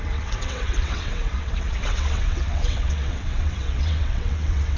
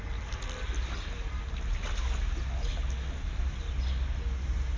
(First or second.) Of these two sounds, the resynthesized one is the first